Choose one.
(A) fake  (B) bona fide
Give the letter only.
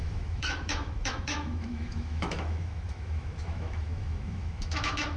A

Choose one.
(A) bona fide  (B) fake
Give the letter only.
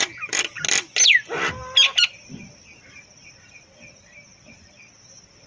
A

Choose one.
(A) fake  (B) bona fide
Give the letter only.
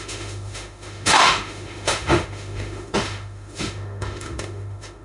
A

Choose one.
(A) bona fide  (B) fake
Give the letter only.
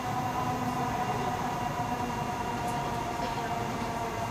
A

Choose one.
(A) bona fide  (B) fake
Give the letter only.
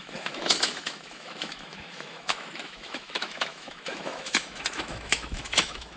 B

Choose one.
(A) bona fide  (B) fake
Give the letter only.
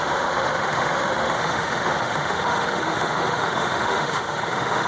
B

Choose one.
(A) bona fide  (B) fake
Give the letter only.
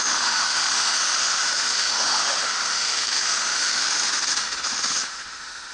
B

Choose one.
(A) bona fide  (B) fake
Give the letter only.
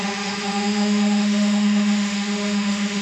B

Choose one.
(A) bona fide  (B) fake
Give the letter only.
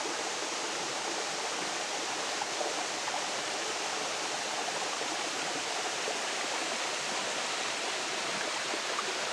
A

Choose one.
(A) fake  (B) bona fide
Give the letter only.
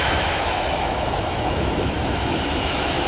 A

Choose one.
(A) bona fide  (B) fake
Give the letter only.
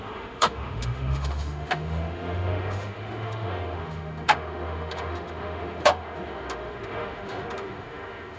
B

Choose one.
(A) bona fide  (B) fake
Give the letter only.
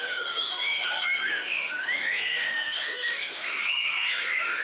B